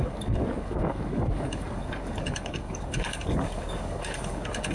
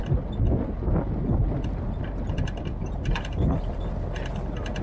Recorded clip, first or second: second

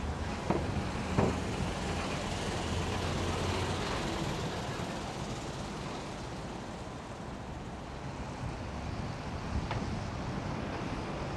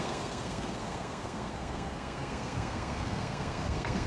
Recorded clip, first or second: first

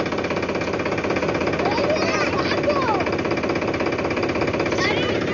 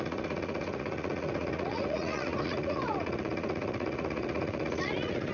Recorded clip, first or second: first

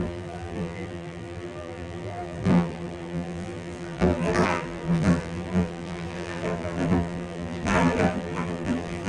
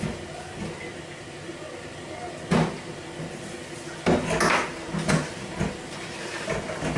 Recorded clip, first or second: second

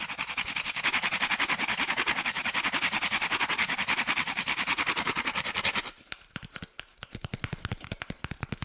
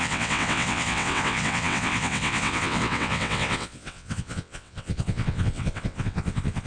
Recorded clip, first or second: first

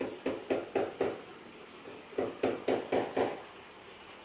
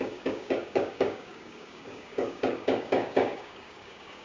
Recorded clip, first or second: first